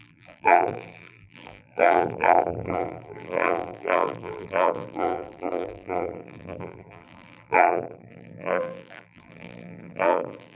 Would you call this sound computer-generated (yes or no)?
yes